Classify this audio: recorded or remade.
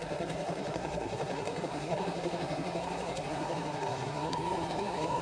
remade